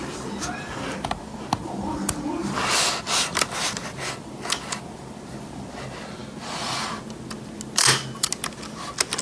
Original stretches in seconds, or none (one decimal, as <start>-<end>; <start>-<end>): 0.0-9.2